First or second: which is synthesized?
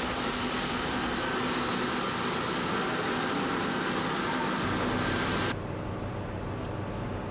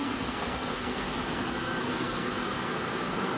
second